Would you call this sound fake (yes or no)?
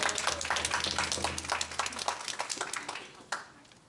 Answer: no